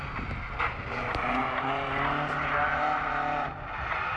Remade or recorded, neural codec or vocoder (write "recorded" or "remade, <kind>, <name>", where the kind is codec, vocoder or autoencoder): recorded